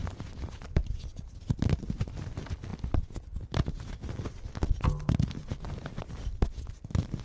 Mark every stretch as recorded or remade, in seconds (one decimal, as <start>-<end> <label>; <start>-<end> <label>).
0.0-7.2 recorded